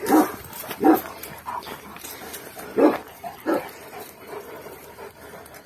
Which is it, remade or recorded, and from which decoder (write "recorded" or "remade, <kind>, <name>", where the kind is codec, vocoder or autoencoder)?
remade, vocoder, BigVGAN v2